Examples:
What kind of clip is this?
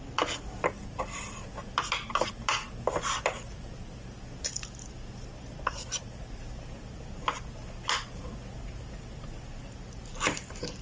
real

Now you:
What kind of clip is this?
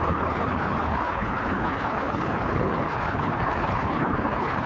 fake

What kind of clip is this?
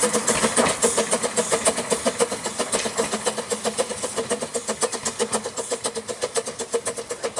real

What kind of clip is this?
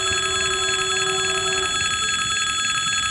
real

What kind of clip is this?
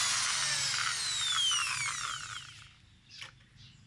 real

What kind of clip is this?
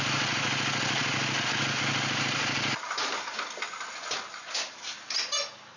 real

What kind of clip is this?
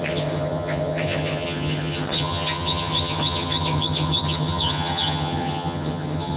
fake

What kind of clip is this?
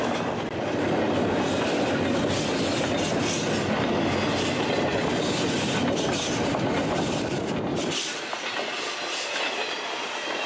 real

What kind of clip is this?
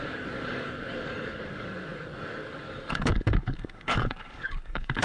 fake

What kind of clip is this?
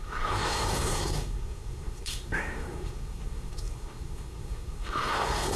fake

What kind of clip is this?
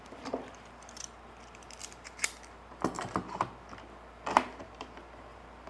fake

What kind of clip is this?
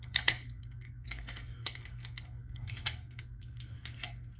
fake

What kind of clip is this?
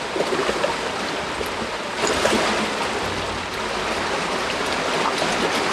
real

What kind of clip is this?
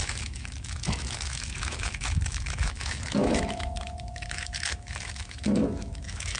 fake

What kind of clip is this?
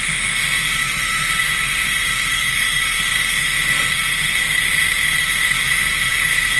fake